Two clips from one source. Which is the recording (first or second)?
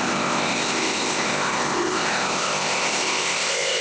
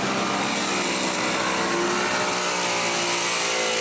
second